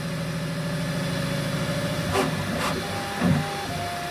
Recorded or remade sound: recorded